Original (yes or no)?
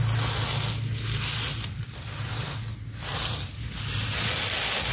yes